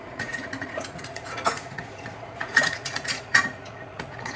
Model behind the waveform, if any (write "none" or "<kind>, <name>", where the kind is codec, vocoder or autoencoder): vocoder, Vocos